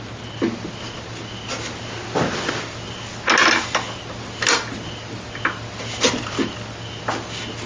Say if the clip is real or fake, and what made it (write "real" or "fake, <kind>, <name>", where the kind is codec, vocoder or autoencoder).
real